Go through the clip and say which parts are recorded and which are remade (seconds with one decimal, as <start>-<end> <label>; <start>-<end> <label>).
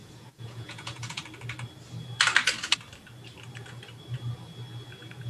0.0-1.2 remade; 1.2-5.3 recorded